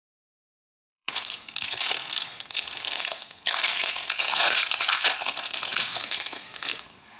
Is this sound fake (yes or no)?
yes